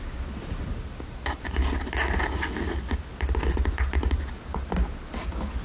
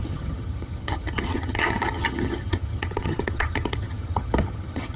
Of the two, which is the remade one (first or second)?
second